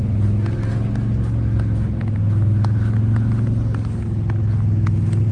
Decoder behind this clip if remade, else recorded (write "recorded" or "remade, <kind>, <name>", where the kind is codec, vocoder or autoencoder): recorded